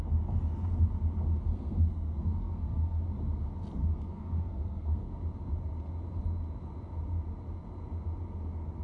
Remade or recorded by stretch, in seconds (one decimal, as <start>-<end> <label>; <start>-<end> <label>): 0.0-1.5 recorded; 1.5-3.0 remade; 3.0-3.8 recorded; 3.8-5.1 remade; 5.1-8.8 recorded